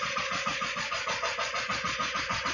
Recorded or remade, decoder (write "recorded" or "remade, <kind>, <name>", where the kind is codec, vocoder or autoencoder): remade, vocoder, Vocos